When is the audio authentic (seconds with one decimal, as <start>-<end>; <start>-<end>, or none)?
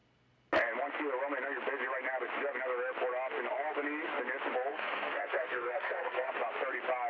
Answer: 0.0-4.7; 6.3-7.1